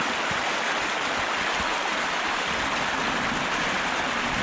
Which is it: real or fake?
real